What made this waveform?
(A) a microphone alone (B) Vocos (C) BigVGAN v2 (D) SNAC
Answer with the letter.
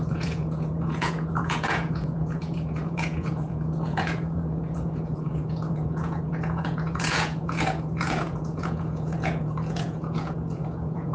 B